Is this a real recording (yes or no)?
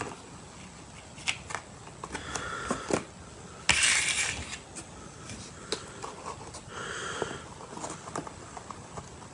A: yes